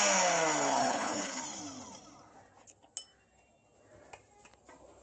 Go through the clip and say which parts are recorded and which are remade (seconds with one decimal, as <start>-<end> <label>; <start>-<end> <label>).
0.0-0.8 recorded; 0.8-1.4 remade; 1.4-5.0 recorded